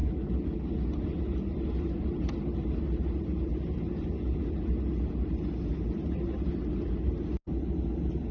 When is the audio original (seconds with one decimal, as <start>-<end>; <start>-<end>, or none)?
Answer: 0.0-8.3